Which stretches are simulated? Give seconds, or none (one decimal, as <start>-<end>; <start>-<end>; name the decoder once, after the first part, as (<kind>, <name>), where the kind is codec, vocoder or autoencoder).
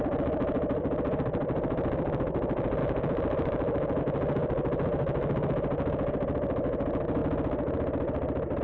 2.8-4.0 (autoencoder, DAC-VAE)